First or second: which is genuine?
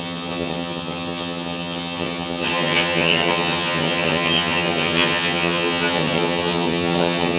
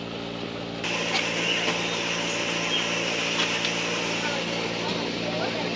second